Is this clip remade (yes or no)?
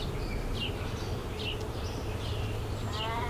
no